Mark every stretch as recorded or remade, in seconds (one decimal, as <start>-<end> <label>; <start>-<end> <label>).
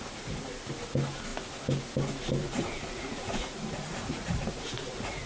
0.0-2.4 recorded; 2.4-5.3 remade